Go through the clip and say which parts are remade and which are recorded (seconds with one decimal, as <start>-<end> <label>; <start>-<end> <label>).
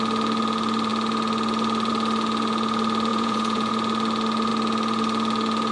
0.0-3.1 recorded; 3.1-3.7 remade; 3.7-5.7 recorded